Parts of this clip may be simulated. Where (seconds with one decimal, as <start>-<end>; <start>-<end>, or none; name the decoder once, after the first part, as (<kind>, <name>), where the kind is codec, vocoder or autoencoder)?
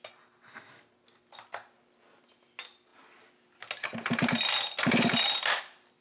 none